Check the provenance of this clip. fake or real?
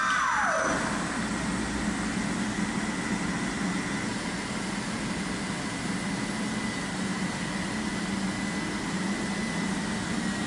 real